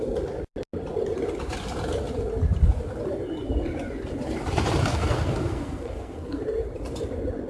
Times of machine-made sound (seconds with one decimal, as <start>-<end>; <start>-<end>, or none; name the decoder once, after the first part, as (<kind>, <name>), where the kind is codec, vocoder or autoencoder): 4.9-6.4 (codec, SNAC)